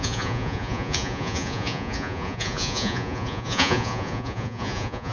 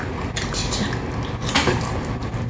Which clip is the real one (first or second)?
second